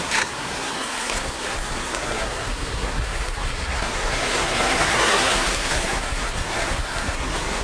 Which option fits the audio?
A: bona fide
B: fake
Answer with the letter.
B